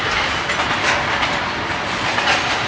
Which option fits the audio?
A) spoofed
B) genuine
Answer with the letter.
A